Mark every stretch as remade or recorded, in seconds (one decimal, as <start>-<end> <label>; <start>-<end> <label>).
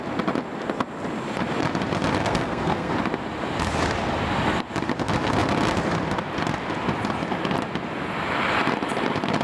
0.0-2.2 recorded; 2.2-2.9 remade; 2.9-9.4 recorded